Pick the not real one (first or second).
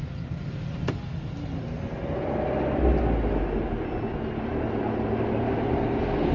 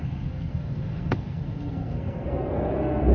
second